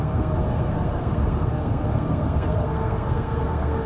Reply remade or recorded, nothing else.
remade